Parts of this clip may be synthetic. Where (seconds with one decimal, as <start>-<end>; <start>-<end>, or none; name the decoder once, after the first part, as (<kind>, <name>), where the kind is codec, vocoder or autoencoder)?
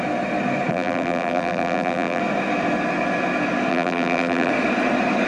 0.7-2.2 (vocoder, BigVGAN v2); 3.7-4.5